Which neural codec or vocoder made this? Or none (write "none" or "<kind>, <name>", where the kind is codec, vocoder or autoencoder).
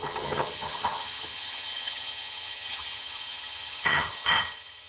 vocoder, HiFi-GAN